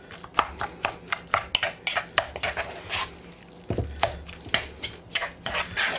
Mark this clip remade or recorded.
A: recorded